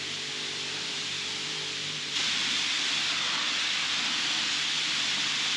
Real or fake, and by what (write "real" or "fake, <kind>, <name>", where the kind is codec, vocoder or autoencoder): fake, vocoder, BigVGAN v2